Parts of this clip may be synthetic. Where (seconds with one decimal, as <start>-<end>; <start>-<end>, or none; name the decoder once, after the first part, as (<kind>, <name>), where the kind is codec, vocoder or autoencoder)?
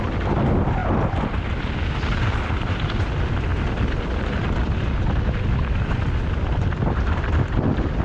0.0-0.8 (vocoder, BigVGAN v2); 2.7-8.0